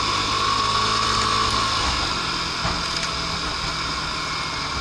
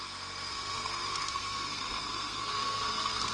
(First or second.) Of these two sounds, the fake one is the second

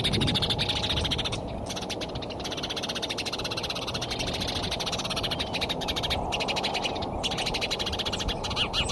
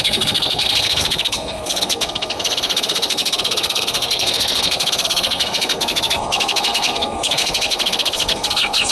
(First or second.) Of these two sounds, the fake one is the second